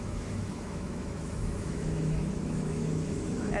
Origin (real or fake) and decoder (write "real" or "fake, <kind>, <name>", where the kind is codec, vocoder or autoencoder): fake, autoencoder, DAC-VAE